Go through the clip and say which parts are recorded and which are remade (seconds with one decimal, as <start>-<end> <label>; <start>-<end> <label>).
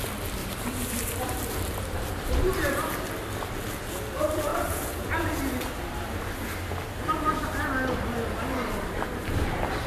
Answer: 0.0-0.4 recorded; 0.4-2.9 remade; 2.9-4.5 recorded; 4.5-5.1 remade; 5.1-9.9 recorded